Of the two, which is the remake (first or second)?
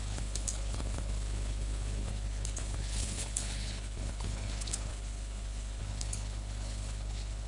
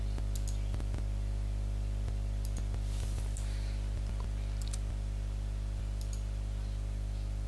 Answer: first